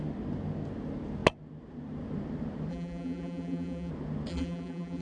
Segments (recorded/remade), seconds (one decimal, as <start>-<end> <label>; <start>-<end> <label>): 0.0-2.7 recorded; 2.7-3.9 remade; 3.9-4.3 recorded; 4.3-5.0 remade